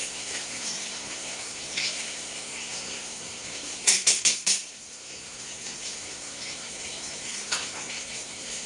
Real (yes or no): no